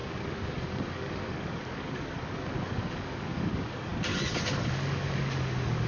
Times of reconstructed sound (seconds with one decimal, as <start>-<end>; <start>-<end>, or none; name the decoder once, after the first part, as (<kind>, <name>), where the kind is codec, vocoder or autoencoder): 0.0-3.9 (codec, DAC); 4.5-5.9